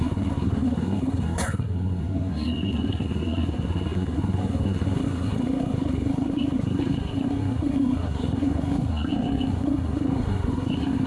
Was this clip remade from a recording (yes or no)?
yes